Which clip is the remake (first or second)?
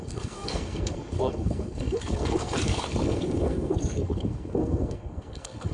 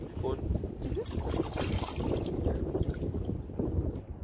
first